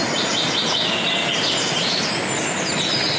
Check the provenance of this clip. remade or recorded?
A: recorded